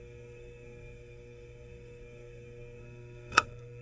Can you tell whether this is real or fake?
fake